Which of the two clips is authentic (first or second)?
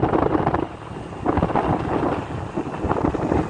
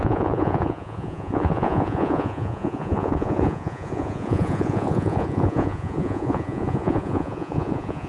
first